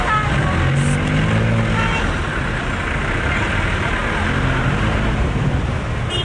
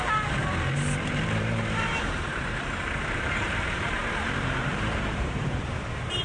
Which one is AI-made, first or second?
second